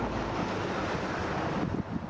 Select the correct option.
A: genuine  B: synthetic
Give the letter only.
A